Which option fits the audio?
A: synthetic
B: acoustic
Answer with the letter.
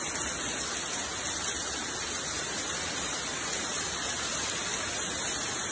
B